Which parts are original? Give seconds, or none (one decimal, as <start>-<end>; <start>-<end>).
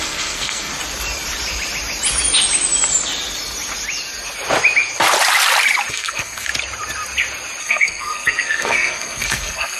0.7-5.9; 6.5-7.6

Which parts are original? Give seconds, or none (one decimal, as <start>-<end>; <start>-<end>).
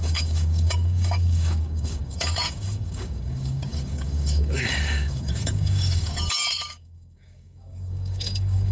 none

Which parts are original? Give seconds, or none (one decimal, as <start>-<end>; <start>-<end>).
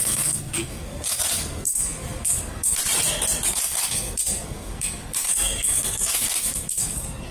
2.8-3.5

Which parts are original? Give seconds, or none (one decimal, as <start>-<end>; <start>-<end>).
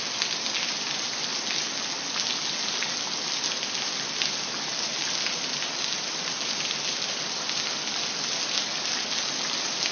0.0-9.9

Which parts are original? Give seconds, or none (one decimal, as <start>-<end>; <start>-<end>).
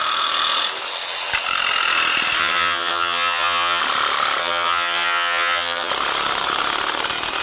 0.0-2.4; 3.8-4.4; 5.9-7.4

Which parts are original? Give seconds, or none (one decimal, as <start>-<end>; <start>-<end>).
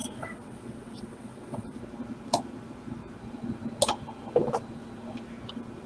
1.8-5.9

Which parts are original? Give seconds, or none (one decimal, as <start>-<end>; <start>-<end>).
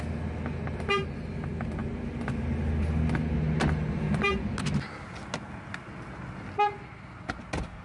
0.0-7.8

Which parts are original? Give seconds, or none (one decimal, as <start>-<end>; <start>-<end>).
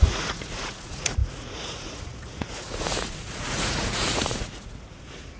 none